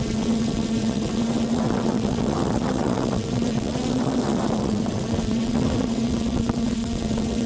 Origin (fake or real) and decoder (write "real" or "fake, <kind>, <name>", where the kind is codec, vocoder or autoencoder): fake, vocoder, WaveNeXt